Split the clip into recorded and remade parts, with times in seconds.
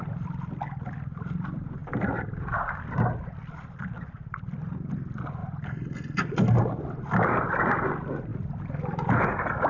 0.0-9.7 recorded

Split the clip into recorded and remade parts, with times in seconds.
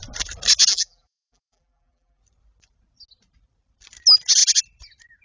0.0-0.7 recorded; 0.7-2.2 remade; 2.2-5.2 recorded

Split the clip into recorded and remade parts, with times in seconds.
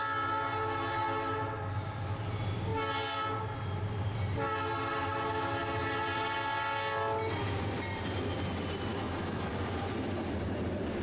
0.0-8.9 recorded; 8.9-9.5 remade; 9.5-11.0 recorded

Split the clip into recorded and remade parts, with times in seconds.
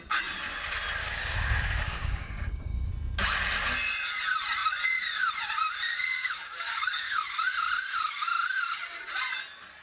0.0-1.0 recorded; 1.0-2.9 remade; 2.9-5.9 recorded; 5.9-7.2 remade; 7.2-9.8 recorded